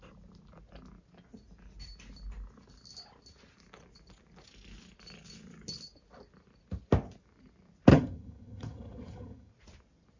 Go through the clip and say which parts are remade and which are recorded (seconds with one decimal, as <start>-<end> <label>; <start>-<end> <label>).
0.0-7.9 recorded; 7.9-9.5 remade; 9.5-10.2 recorded